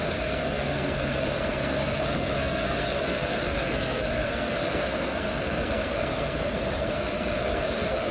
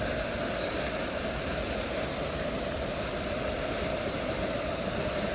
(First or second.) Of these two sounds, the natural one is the second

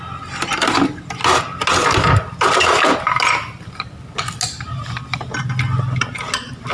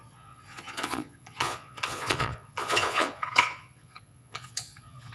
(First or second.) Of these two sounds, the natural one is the first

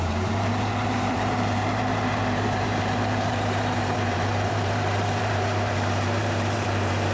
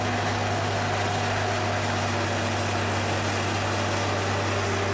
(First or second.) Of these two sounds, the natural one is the second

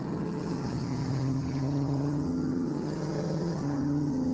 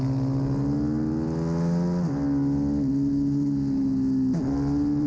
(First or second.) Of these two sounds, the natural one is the second